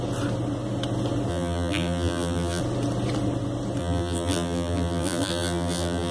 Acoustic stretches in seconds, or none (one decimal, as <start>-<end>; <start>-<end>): 0.0-1.3; 2.6-3.8